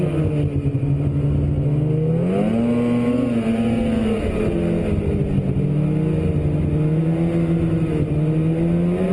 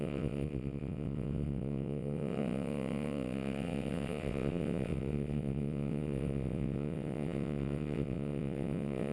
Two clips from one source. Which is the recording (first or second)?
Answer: first